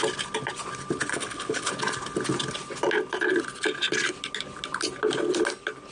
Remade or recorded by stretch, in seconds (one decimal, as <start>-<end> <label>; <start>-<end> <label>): 0.0-1.1 recorded; 1.1-1.7 remade; 1.7-5.9 recorded

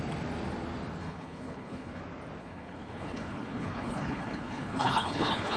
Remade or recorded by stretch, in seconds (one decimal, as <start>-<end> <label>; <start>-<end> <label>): 0.0-1.0 recorded; 1.0-2.0 remade; 2.0-2.4 recorded; 2.4-5.6 remade